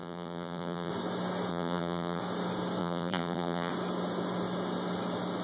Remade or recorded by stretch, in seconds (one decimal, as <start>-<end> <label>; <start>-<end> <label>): 0.0-0.9 remade; 0.9-1.5 recorded; 1.5-2.2 remade; 2.2-2.8 recorded; 2.8-3.7 remade; 3.7-5.4 recorded